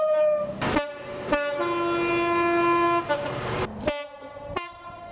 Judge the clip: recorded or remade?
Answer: recorded